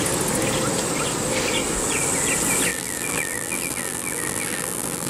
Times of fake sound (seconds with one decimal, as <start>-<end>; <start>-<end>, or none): 2.7-5.1